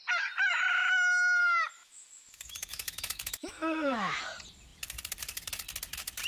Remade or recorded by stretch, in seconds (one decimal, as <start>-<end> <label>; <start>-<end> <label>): 0.0-0.7 recorded; 0.7-1.4 remade; 1.4-1.8 recorded; 1.8-4.2 remade; 4.2-6.3 recorded